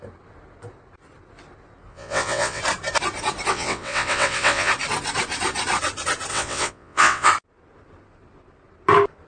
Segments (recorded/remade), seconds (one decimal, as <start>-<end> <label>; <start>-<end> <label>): 0.0-1.9 recorded; 1.9-2.6 remade; 2.6-3.5 recorded; 3.5-4.7 remade; 4.7-6.3 recorded; 6.3-7.3 remade; 7.3-9.3 recorded